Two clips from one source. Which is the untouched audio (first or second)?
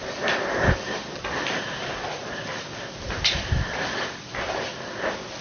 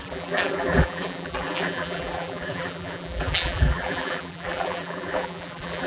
first